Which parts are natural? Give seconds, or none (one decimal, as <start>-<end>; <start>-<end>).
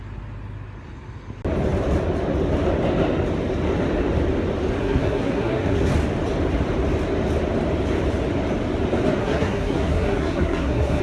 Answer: 0.0-4.8; 5.9-9.2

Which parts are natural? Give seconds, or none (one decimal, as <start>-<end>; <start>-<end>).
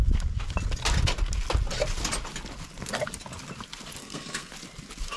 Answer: 0.0-4.0; 4.5-5.2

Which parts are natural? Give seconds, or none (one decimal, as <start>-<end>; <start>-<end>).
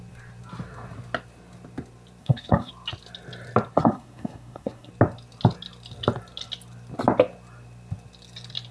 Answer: 0.0-2.2; 2.7-3.8; 4.9-8.7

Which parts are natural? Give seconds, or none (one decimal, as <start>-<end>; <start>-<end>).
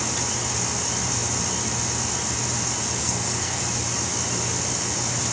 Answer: 0.0-3.0; 3.6-5.3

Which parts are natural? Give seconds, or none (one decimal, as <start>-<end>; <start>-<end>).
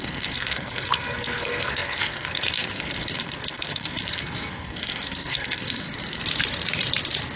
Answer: 6.2-7.4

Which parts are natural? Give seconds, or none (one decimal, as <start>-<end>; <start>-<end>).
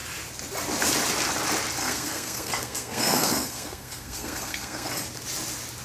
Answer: 0.0-1.8; 4.9-5.8